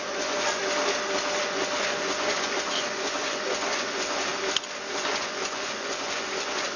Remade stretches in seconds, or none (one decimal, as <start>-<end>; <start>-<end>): 0.0-0.6; 1.4-4.3; 4.9-6.8